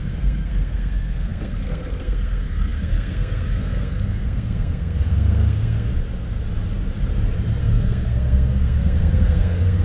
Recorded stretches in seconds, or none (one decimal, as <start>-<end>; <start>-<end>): 5.9-7.6